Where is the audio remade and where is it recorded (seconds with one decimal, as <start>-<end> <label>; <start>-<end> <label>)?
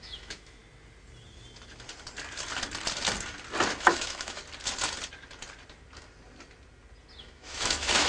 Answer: 0.0-0.6 remade; 0.6-3.8 recorded; 3.8-4.4 remade; 4.4-7.2 recorded; 7.2-8.1 remade